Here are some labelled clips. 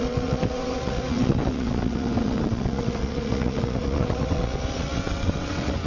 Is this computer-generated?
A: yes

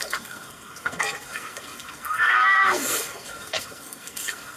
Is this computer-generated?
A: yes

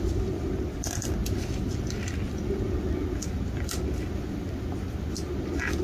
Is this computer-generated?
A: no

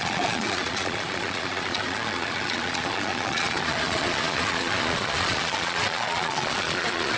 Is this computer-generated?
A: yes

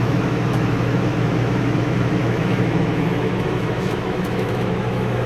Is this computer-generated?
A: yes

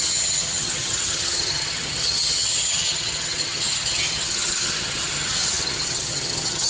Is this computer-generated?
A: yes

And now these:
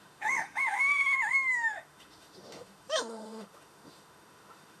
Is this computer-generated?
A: yes